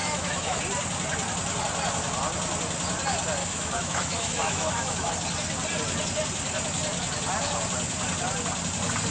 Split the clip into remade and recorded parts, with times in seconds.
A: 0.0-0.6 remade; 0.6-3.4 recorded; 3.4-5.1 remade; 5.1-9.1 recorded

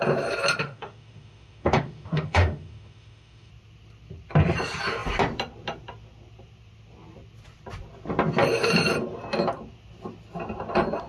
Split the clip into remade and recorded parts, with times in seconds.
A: 0.0-0.6 recorded; 0.6-3.5 remade; 3.5-11.1 recorded

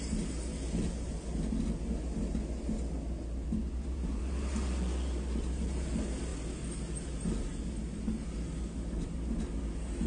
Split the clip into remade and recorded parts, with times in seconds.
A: 0.0-10.1 recorded

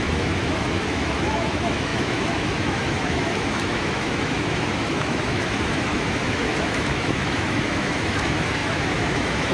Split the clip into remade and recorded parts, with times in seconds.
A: 0.0-9.5 remade

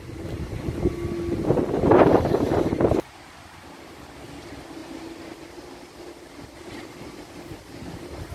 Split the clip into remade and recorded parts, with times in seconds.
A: 0.0-8.3 recorded

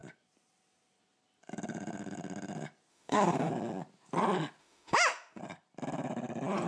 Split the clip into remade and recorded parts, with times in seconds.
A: 0.0-2.9 recorded; 2.9-3.5 remade; 3.5-4.6 recorded; 4.6-5.4 remade; 5.4-6.7 recorded

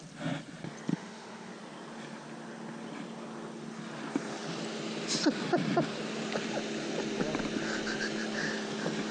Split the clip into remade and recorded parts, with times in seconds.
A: 0.0-0.9 recorded; 0.9-1.5 remade; 1.5-9.1 recorded